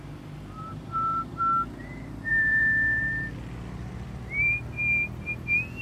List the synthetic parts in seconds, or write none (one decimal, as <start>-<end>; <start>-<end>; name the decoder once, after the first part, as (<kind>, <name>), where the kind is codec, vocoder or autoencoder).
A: 0.7-1.4 (vocoder, BigVGAN v2); 2.3-3.0